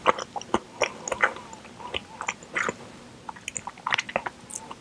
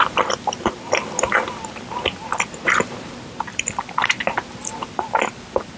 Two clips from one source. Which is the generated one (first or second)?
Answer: second